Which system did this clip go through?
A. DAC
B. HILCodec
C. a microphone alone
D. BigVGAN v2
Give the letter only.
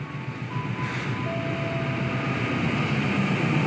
C